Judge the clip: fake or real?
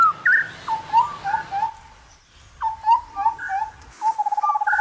real